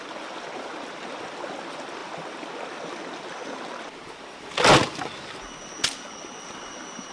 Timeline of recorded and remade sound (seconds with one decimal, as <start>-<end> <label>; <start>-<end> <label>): 0.0-7.1 recorded